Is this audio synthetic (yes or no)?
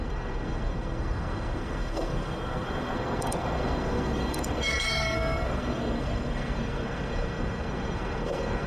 yes